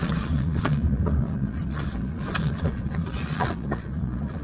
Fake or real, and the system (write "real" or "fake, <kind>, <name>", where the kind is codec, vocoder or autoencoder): fake, vocoder, Vocos